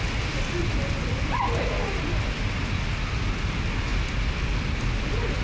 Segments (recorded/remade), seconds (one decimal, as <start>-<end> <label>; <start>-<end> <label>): 0.0-5.4 recorded